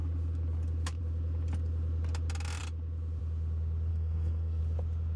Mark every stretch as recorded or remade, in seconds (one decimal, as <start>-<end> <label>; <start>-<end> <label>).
0.0-3.9 recorded; 3.9-4.6 remade; 4.6-5.2 recorded